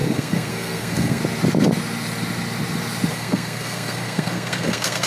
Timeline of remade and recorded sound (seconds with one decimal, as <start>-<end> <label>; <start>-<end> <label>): 0.0-1.2 remade; 1.2-3.1 recorded; 3.1-5.1 remade